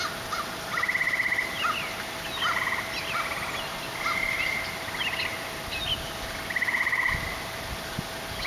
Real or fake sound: real